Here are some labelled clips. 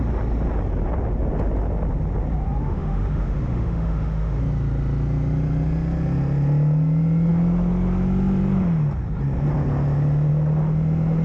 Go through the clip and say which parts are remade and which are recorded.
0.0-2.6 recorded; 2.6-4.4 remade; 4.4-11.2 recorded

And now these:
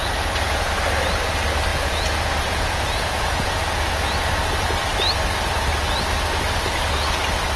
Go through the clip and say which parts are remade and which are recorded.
0.0-0.7 remade; 0.7-1.7 recorded; 1.7-4.3 remade; 4.3-7.6 recorded

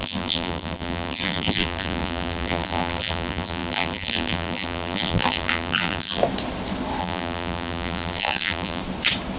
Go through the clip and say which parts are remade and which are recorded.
0.0-6.2 remade; 6.2-7.0 recorded; 7.0-8.8 remade; 8.8-9.4 recorded